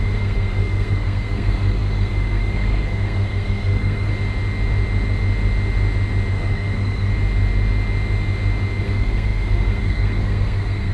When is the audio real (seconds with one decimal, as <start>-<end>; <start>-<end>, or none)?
4.1-6.3; 7.1-8.8